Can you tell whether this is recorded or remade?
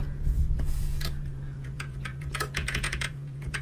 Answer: remade